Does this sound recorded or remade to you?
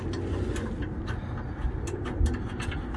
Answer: recorded